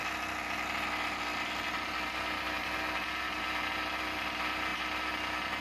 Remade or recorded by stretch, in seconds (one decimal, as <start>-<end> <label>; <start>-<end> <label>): 0.0-5.6 recorded